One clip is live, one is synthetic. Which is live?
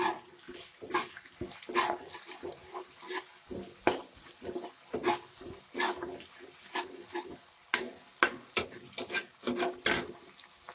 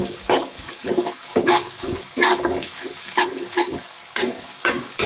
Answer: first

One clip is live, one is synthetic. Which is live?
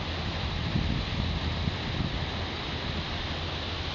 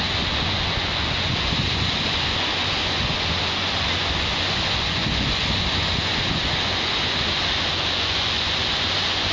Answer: first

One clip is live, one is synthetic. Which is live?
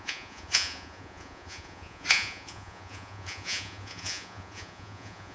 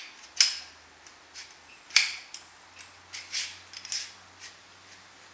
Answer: second